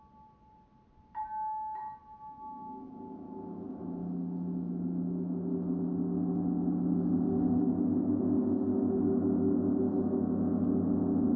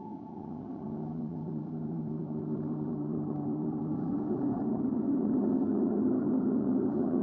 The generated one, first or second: second